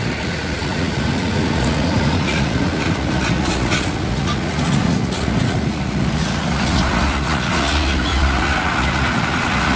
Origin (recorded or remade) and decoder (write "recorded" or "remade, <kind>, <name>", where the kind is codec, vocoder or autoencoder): remade, vocoder, Vocos